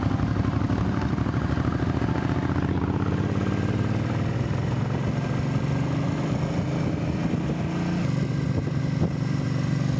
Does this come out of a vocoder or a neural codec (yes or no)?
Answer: no